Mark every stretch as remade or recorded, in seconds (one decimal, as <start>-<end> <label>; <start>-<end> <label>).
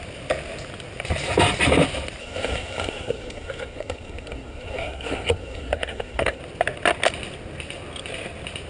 0.0-2.2 recorded; 2.2-6.4 remade; 6.4-8.7 recorded